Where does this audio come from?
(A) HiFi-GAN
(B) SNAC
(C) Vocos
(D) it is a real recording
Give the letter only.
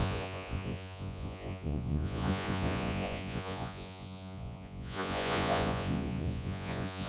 C